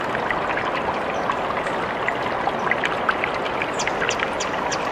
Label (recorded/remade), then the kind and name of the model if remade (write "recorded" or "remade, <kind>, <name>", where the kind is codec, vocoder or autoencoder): recorded